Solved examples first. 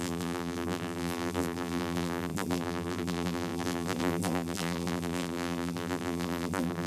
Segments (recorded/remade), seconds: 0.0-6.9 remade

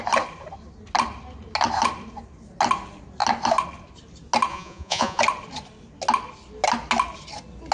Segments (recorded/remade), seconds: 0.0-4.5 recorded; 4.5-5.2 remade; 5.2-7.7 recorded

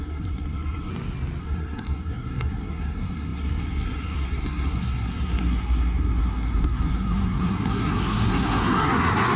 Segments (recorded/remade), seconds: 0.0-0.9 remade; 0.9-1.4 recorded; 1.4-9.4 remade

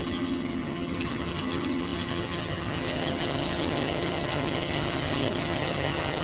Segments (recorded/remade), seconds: 0.0-6.2 remade